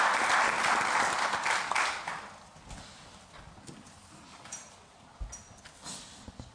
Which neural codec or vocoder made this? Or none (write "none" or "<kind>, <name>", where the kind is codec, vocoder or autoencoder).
none